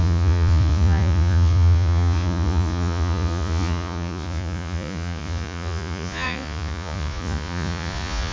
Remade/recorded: remade